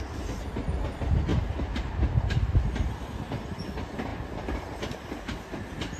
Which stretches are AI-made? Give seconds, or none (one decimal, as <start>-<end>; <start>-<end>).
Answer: none